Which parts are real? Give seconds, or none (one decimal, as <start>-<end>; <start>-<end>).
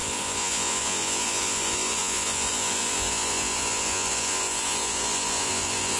none